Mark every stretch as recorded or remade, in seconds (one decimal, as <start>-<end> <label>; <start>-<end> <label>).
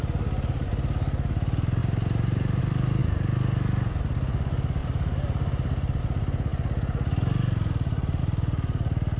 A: 0.0-1.8 recorded; 1.8-2.6 remade; 2.6-4.8 recorded; 4.8-6.0 remade; 6.0-9.2 recorded